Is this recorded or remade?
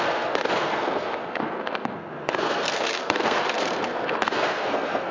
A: remade